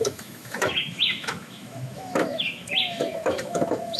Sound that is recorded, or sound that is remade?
remade